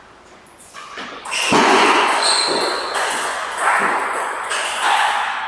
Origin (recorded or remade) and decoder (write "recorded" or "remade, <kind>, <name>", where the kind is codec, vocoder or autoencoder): remade, vocoder, Vocos